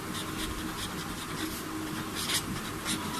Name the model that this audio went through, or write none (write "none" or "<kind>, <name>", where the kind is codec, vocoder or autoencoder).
none